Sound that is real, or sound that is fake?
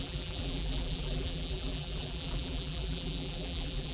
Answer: fake